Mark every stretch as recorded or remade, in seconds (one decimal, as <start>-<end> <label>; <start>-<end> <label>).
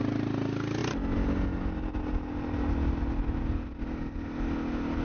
0.0-5.0 recorded